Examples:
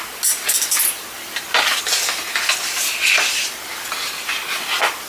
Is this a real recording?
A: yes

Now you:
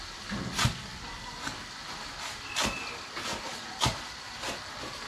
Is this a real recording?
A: yes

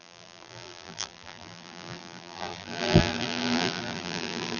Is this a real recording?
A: no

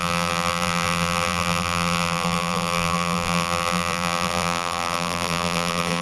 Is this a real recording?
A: no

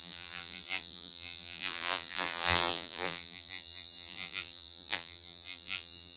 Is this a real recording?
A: no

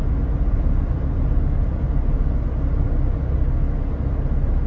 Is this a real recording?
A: yes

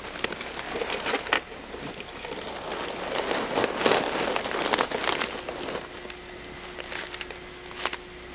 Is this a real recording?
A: yes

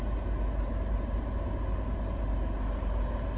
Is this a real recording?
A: yes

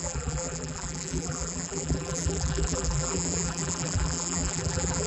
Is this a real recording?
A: no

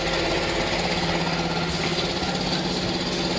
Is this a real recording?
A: yes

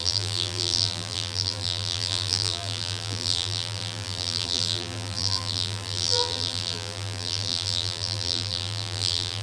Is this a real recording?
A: no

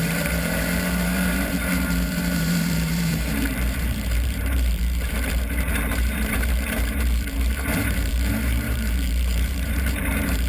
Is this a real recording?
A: no